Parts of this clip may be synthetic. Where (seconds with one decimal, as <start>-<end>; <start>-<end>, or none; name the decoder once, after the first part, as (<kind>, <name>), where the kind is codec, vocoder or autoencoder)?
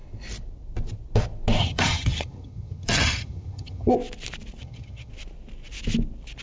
1.6-3.9 (vocoder, HiFi-GAN); 4.6-5.1